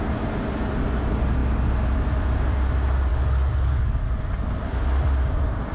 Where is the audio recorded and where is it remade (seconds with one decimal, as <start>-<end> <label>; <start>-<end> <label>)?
0.0-3.1 recorded; 3.1-4.0 remade; 4.0-5.7 recorded